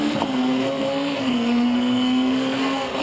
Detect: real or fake fake